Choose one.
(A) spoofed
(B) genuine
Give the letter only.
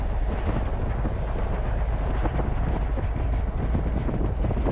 B